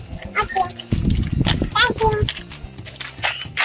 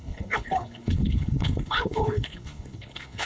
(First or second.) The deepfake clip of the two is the second